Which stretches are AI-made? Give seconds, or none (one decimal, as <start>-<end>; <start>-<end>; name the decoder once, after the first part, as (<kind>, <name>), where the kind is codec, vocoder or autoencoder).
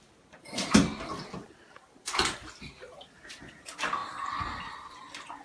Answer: none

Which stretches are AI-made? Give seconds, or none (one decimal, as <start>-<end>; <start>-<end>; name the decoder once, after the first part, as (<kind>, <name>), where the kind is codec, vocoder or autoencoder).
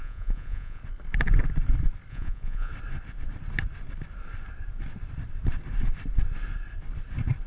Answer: 0.0-0.8 (vocoder, Vocos); 2.1-2.7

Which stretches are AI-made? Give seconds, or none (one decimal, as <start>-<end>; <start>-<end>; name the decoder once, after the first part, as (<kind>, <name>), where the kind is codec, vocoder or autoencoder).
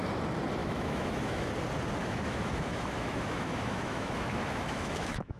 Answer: 0.6-1.5 (autoencoder, DAC-VAE); 2.0-5.4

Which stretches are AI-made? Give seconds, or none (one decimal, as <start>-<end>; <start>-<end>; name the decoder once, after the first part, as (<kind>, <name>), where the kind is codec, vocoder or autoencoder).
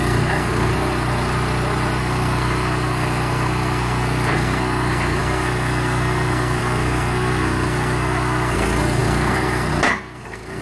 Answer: 0.0-0.7 (codec, SNAC); 2.0-10.6